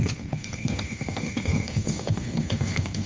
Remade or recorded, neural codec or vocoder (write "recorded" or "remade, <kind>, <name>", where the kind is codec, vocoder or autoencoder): remade, codec, SNAC